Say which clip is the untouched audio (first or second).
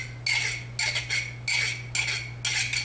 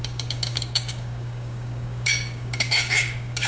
first